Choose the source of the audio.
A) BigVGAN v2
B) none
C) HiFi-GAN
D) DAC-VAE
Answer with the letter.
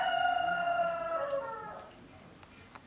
B